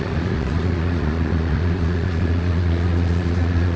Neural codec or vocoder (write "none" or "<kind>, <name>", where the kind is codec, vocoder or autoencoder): vocoder, Vocos